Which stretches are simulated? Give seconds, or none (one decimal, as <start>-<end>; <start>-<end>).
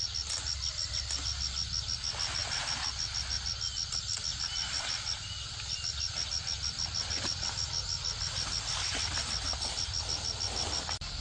none